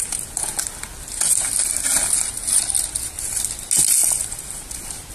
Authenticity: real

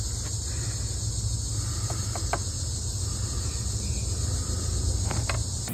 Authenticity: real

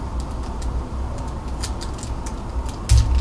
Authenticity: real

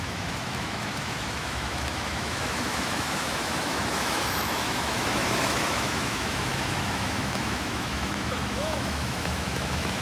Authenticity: fake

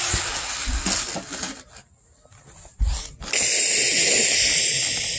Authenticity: real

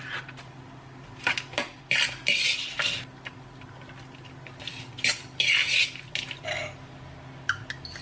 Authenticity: real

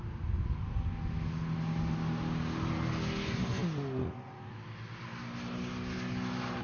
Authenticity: real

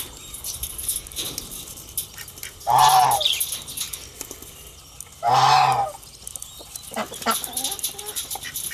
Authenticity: real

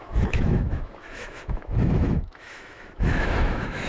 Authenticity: fake